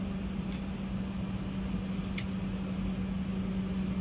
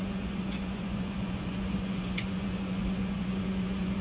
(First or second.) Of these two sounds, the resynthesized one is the second